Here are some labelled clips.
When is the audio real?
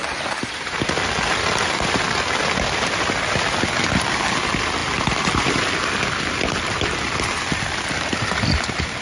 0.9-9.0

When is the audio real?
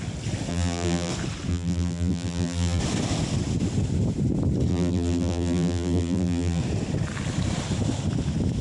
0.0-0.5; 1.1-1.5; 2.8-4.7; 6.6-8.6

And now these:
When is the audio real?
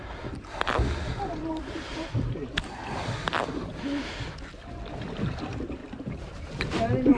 0.0-1.4; 2.5-5.8; 6.7-7.2